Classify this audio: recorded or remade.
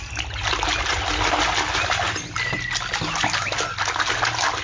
recorded